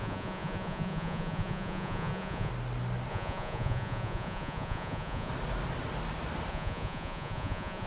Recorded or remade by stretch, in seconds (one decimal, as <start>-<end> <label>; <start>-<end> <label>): 0.0-2.5 remade; 2.5-3.1 recorded; 3.1-5.3 remade; 5.3-6.5 recorded; 6.5-7.9 remade